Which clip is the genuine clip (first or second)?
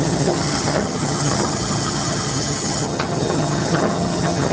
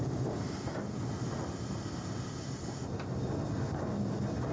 second